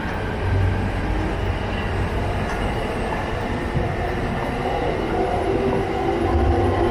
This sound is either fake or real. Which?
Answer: real